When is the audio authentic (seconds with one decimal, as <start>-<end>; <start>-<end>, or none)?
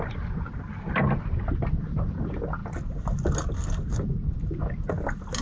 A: 0.0-5.4